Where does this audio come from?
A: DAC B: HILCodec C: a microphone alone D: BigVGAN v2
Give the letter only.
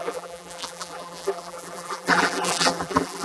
D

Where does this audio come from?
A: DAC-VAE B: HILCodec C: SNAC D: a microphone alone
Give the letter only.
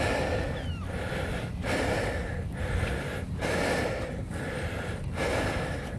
D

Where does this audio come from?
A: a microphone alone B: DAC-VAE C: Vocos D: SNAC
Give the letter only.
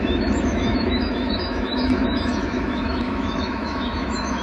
B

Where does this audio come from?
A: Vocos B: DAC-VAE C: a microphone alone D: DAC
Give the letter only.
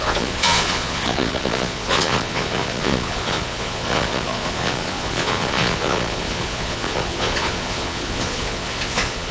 A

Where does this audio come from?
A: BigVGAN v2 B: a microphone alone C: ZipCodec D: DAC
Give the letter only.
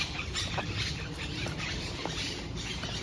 A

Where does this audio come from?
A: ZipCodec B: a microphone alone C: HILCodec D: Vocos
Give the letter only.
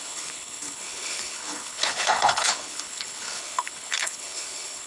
C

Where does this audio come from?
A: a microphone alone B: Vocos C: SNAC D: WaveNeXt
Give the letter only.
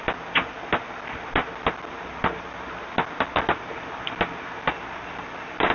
A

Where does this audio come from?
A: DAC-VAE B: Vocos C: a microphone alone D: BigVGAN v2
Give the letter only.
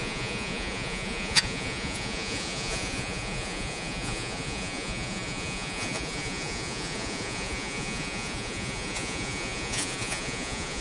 B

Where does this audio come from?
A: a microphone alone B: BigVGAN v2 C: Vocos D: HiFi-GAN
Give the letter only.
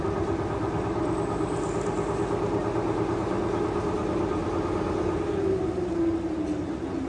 A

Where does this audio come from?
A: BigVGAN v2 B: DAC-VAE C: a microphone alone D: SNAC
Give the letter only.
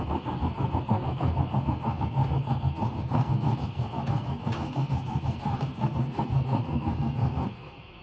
D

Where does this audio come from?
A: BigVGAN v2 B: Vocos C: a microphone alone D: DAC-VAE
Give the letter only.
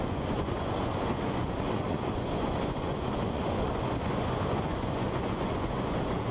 B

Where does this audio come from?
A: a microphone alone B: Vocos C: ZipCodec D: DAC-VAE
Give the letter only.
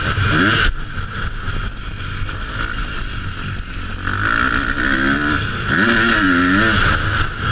A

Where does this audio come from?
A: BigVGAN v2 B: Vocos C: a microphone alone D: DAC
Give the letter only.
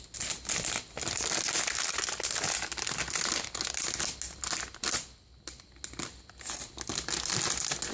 C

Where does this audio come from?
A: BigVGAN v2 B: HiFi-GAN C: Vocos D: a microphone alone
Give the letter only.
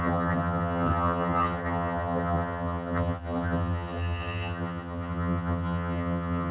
B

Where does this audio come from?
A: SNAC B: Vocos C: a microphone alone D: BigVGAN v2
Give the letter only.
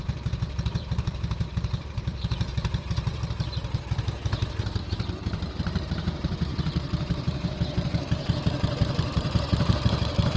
D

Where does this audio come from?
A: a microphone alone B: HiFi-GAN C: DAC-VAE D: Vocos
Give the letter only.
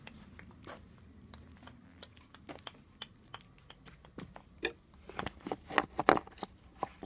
A